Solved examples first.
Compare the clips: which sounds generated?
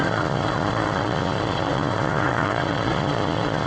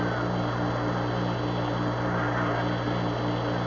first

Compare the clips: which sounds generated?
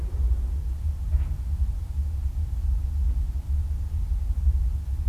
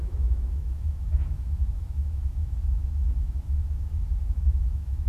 second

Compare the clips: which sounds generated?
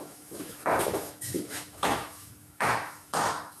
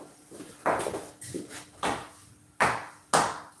first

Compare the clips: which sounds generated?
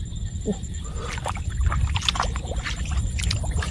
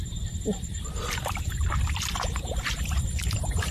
second